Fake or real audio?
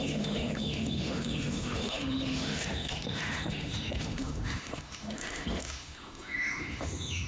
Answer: fake